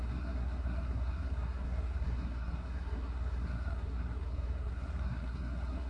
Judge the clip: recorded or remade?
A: remade